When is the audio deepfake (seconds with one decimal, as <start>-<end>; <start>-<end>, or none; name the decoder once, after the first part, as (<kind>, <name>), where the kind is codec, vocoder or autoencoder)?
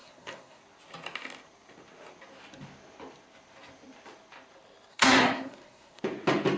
0.0-0.6 (codec, SNAC); 4.9-6.0